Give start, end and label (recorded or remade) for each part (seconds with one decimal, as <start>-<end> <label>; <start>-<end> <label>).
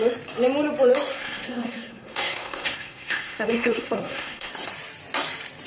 0.0-1.1 recorded; 1.1-4.5 remade; 4.5-5.7 recorded